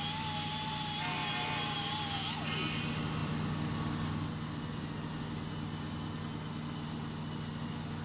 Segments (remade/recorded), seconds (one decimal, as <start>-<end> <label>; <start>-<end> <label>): 0.0-8.0 recorded